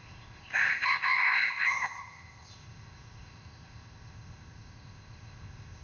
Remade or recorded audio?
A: remade